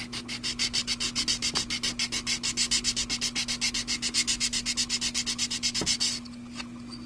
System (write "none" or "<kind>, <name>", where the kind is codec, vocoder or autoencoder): none